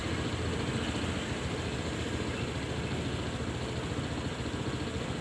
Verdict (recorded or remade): recorded